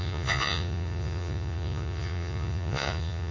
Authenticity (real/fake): fake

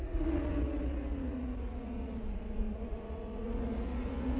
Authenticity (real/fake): fake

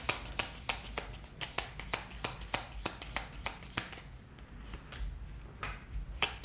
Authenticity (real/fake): real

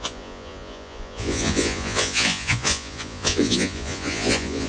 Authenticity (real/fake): fake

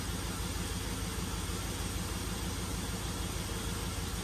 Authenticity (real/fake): real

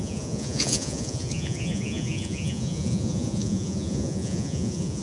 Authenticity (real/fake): fake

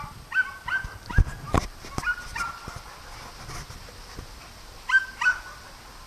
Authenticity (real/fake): real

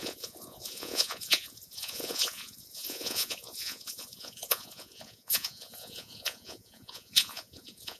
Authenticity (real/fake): fake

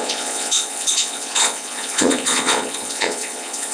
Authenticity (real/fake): fake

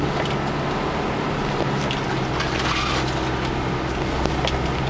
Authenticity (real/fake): real